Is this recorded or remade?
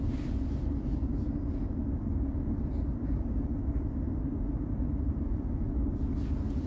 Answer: recorded